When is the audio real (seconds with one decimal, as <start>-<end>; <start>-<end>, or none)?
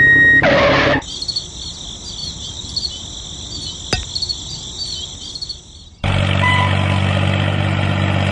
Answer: 0.0-2.2; 2.9-8.3